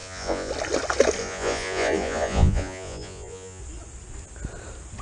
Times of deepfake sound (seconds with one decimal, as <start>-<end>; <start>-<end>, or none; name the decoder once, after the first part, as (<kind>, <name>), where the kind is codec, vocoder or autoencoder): 0.0-0.5 (vocoder, Vocos); 1.2-3.6